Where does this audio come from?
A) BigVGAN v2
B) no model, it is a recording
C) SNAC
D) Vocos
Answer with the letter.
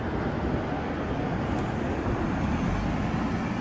B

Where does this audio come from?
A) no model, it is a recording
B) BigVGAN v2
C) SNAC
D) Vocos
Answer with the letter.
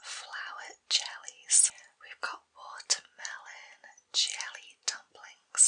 A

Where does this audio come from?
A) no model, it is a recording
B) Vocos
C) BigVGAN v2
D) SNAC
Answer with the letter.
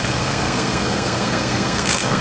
D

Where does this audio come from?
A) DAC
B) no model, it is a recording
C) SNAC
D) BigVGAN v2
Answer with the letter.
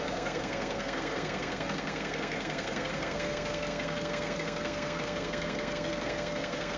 C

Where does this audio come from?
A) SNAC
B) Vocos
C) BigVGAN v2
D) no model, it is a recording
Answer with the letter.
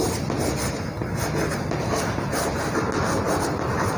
D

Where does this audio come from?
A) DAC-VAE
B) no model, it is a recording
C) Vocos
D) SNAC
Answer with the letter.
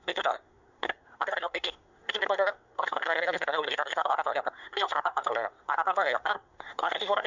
D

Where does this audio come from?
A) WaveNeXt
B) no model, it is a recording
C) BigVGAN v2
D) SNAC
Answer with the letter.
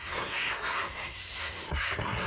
D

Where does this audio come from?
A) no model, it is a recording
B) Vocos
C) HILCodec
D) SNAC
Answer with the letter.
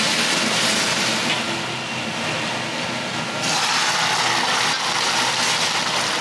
A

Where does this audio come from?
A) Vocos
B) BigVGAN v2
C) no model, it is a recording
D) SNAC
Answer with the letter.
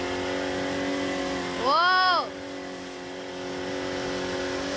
C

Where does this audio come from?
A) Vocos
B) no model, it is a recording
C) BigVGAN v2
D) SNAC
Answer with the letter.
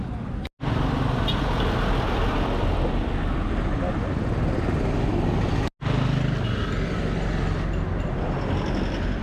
B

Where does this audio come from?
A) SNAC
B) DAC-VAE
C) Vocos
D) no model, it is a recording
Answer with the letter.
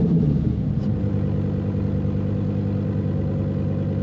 D